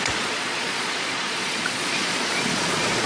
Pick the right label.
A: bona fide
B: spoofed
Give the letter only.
B